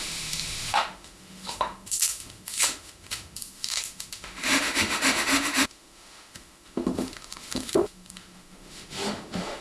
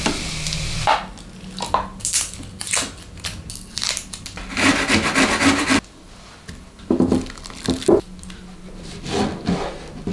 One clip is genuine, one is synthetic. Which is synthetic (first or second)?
first